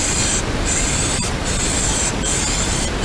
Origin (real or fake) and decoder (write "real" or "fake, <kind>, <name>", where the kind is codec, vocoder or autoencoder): real